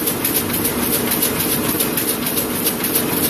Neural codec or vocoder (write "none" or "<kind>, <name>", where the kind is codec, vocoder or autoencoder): none